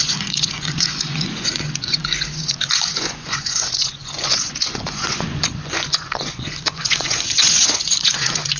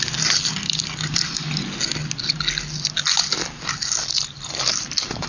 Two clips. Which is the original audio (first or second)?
second